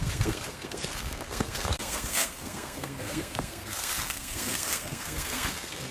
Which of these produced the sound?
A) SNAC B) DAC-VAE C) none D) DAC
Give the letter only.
A